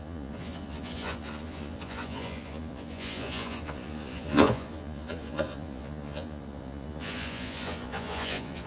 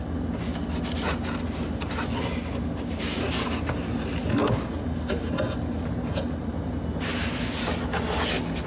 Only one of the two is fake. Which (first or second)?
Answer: first